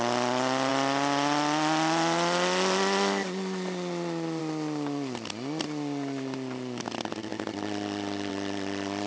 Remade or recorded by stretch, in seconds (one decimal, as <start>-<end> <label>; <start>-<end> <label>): 0.0-9.1 recorded

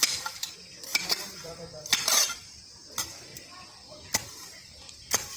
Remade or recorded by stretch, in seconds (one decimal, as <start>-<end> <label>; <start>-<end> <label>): 0.0-3.3 remade; 3.3-4.9 recorded; 4.9-5.4 remade

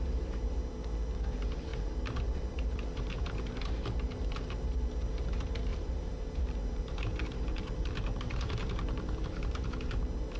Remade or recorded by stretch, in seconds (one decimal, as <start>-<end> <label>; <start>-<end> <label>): 0.0-10.4 remade

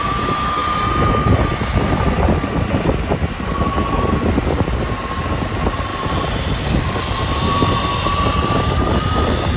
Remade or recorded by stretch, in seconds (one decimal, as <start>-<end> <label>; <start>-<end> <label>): 0.0-3.2 recorded; 3.2-4.1 remade; 4.1-5.9 recorded; 5.9-9.6 remade